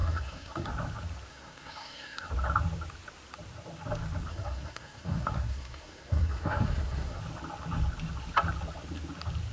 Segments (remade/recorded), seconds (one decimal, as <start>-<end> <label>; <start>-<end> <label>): 0.0-0.7 remade; 0.7-1.3 recorded; 1.3-2.3 remade; 2.3-4.3 recorded; 4.3-7.2 remade; 7.2-9.5 recorded